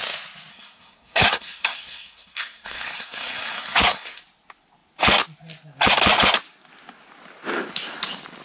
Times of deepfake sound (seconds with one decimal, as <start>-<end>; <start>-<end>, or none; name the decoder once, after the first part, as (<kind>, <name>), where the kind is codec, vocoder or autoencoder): 0.5-4.2 (codec, SNAC)